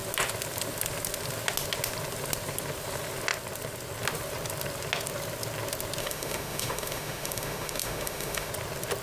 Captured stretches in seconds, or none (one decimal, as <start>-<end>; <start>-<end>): 0.0-6.0; 8.5-9.0